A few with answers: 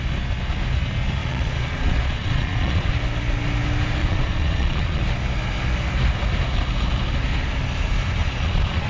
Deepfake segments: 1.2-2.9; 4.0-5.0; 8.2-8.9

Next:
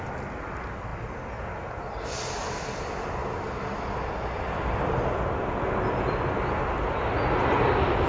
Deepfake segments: none

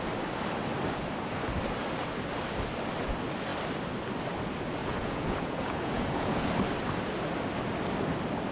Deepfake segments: 4.8-6.5

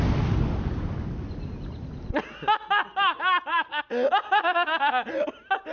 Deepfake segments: 3.5-4.1